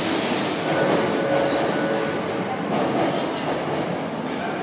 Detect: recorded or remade recorded